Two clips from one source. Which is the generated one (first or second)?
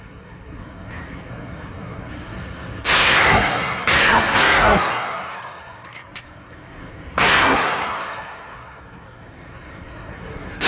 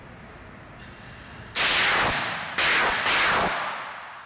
first